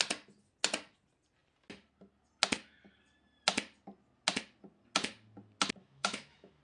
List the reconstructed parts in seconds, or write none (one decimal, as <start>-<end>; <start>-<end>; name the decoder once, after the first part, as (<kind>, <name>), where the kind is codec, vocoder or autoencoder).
5.8-6.6 (autoencoder, DAC-VAE)